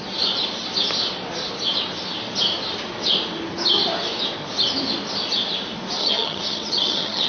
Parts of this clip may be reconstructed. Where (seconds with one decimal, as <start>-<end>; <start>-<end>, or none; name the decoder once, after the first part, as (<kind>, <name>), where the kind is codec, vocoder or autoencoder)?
6.0-7.3 (vocoder, HiFi-GAN)